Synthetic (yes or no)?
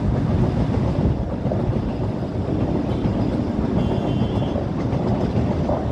no